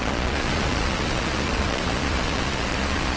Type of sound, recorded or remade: remade